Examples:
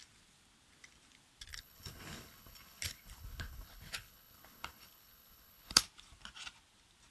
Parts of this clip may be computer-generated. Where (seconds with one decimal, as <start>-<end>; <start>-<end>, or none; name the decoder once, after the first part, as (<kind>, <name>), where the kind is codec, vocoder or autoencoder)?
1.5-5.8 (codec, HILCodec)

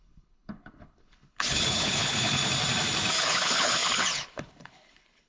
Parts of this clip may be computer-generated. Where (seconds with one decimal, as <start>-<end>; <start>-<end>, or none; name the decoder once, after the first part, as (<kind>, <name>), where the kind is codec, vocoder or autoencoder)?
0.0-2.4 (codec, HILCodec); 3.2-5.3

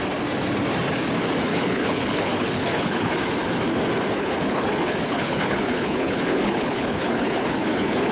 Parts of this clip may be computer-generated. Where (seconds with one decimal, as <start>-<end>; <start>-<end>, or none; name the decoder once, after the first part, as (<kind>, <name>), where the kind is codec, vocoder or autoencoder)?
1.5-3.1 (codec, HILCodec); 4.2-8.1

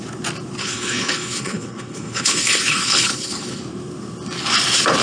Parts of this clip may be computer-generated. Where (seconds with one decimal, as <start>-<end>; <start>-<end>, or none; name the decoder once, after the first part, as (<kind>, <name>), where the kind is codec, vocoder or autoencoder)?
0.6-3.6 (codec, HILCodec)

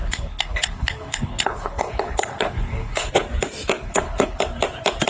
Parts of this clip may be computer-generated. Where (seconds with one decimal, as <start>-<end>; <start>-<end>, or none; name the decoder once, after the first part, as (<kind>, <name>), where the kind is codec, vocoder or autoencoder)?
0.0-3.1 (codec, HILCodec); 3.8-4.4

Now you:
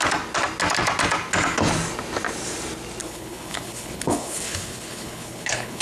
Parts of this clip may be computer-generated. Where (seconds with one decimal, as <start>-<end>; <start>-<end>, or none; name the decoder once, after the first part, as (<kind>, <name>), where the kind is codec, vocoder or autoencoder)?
3.0-5.8 (codec, HILCodec)

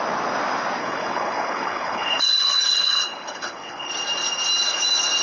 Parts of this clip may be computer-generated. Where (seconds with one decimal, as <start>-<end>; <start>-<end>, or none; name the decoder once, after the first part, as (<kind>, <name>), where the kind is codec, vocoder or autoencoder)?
0.8-3.9 (codec, HILCodec)

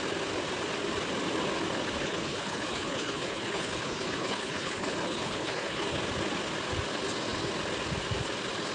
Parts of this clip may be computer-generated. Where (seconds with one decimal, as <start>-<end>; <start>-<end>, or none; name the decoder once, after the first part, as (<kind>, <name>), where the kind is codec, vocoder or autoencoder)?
2.0-6.0 (codec, HILCodec)